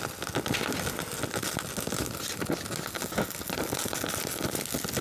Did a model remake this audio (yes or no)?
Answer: no